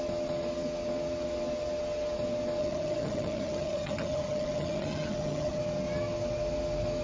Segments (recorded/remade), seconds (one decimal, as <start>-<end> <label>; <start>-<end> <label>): 0.0-2.6 recorded; 2.6-5.6 remade; 5.6-7.0 recorded